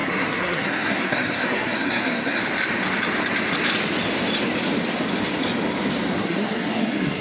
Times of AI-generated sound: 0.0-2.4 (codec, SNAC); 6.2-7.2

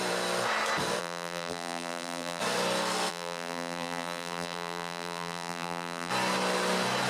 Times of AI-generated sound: 1.0-2.4 (vocoder, BigVGAN v2); 3.1-6.1

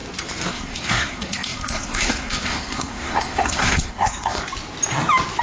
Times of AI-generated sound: 0.5-4.4 (codec, SNAC)

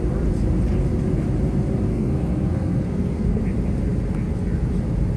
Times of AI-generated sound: 1.9-3.4 (codec, SNAC)

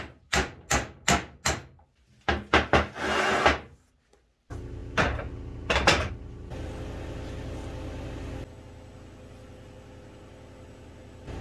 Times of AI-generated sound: none

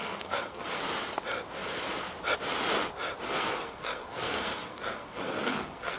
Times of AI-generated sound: 0.0-0.8 (codec, SNAC); 3.3-6.0

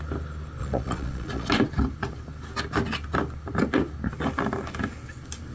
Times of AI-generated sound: 0.6-1.5 (vocoder, Vocos)